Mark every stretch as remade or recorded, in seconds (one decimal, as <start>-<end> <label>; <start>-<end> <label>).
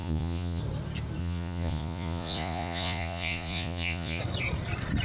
0.0-0.6 remade; 0.6-1.2 recorded; 1.2-4.2 remade; 4.2-5.0 recorded